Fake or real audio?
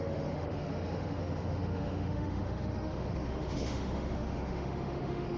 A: fake